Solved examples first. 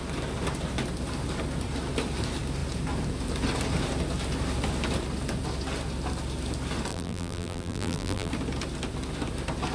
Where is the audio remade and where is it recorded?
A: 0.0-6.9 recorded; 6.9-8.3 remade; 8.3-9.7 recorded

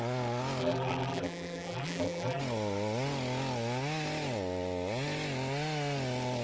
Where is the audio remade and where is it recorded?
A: 0.0-0.6 recorded; 0.6-2.4 remade; 2.4-6.4 recorded

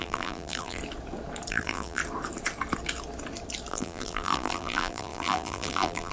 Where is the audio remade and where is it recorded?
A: 0.0-0.8 remade; 0.8-1.5 recorded; 1.5-2.0 remade; 2.0-3.7 recorded; 3.7-6.1 remade

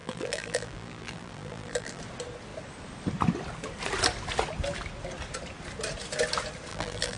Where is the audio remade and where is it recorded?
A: 0.0-2.0 remade; 2.0-6.7 recorded; 6.7-7.2 remade

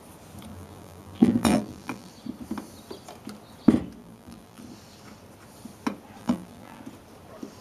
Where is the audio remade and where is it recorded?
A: 0.0-0.5 recorded; 0.5-2.1 remade; 2.1-4.0 recorded; 4.0-4.6 remade; 4.6-6.2 recorded; 6.2-6.8 remade; 6.8-7.6 recorded

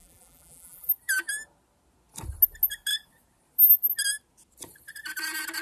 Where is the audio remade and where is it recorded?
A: 0.0-0.9 remade; 0.9-5.6 recorded

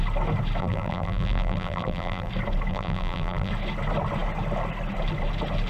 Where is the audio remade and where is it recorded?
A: 0.0-0.6 recorded; 0.6-2.3 remade; 2.3-2.7 recorded; 2.7-3.5 remade; 3.5-5.7 recorded